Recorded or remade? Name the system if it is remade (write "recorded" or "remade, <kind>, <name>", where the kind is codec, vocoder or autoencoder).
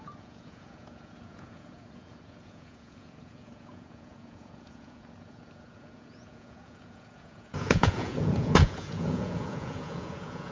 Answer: remade, vocoder, Vocos